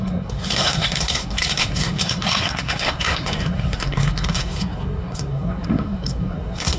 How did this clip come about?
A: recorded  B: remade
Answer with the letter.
B